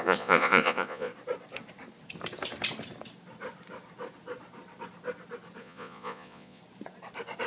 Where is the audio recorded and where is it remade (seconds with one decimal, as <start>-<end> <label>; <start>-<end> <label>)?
0.0-1.1 remade; 1.1-5.6 recorded; 5.6-6.6 remade; 6.6-7.5 recorded